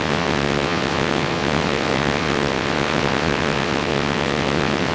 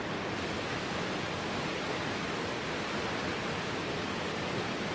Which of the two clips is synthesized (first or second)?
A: first